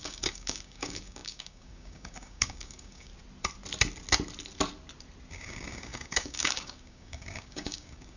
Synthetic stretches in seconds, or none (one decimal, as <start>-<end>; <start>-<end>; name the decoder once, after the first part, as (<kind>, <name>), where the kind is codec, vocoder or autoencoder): 0.0-3.1 (codec, DAC); 5.3-8.2